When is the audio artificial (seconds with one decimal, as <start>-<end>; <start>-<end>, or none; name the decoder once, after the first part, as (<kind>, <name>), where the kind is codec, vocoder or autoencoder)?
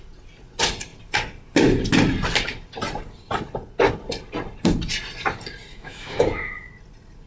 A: 5.7-6.7 (autoencoder, DAC-VAE)